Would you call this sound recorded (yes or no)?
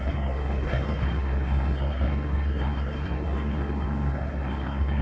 no